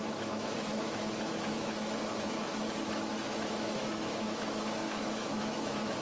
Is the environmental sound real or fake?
fake